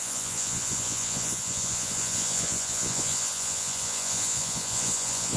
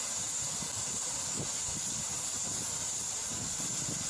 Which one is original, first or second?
second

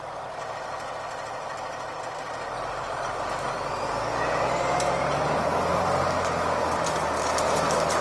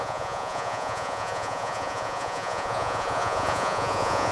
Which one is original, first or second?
first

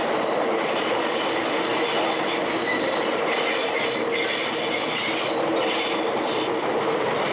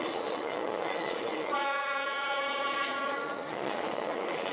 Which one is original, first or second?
first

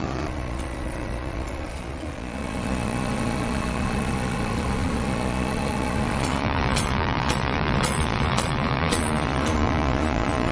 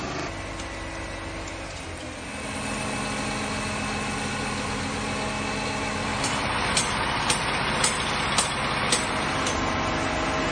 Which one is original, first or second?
second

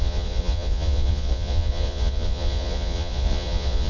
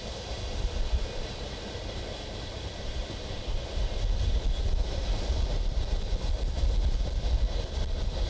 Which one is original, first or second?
second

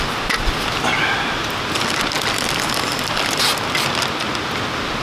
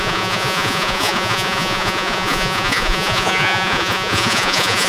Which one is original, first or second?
first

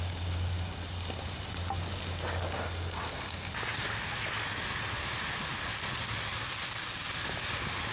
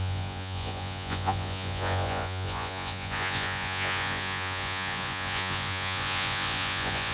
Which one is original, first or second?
first